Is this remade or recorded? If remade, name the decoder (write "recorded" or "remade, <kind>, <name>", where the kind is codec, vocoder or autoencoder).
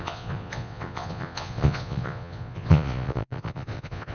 remade, vocoder, Vocos